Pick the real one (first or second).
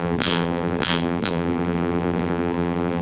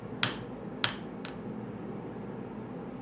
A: second